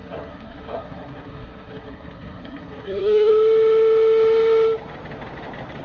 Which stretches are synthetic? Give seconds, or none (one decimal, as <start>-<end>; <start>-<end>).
0.0-3.3

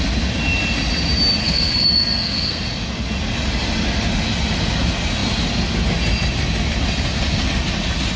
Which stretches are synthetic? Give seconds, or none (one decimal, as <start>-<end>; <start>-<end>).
1.4-2.6

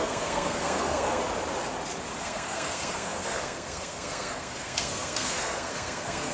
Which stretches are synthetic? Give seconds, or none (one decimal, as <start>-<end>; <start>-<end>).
0.0-1.2; 2.2-6.3